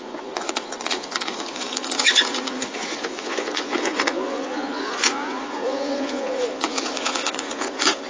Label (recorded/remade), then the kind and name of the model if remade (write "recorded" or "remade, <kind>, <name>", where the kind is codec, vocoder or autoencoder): remade, vocoder, Vocos